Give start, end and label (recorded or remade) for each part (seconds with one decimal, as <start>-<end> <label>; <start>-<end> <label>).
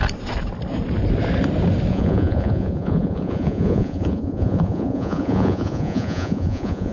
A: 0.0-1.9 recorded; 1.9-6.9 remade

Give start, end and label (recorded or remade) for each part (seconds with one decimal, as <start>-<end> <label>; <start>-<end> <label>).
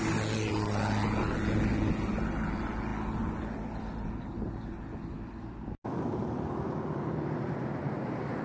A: 0.0-8.4 recorded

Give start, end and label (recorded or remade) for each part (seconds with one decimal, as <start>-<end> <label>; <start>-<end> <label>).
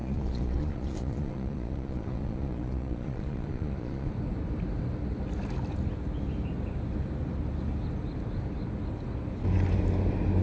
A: 0.0-4.1 remade; 4.1-10.4 recorded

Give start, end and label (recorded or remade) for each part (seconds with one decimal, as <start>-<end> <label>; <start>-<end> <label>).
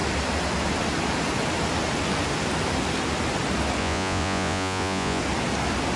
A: 0.0-3.8 recorded; 3.8-5.2 remade; 5.2-6.0 recorded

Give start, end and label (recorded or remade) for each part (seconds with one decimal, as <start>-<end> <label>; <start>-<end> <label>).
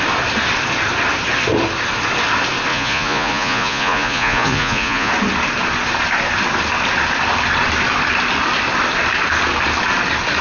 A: 0.0-2.7 recorded; 2.7-5.1 remade; 5.1-10.4 recorded